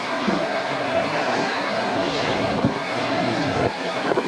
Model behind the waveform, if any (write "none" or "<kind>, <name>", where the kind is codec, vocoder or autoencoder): codec, SNAC